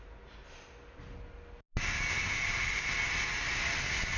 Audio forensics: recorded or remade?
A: recorded